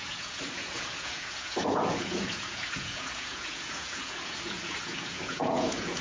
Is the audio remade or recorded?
remade